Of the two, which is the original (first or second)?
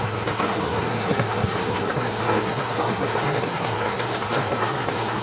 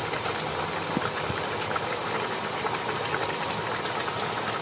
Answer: second